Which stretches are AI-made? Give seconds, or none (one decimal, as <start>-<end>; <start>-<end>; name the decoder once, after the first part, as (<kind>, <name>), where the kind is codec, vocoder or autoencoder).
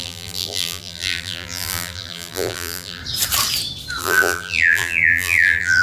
0.0-3.0 (vocoder, BigVGAN v2); 4.0-5.8